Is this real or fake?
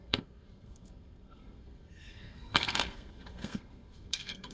fake